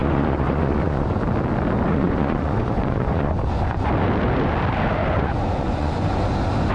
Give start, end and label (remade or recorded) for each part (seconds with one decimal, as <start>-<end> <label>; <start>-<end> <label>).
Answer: 0.0-1.2 remade; 1.2-1.9 recorded; 1.9-3.9 remade; 3.9-5.0 recorded; 5.0-6.2 remade; 6.2-6.7 recorded